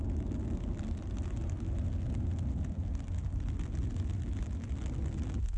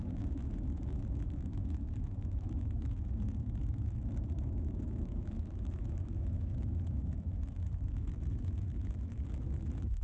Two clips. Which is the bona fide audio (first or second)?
first